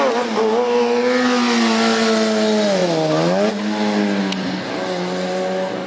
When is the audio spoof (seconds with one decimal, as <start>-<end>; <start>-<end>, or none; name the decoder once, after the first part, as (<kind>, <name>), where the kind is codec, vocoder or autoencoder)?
none